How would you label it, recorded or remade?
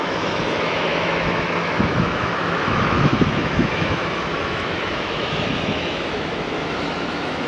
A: remade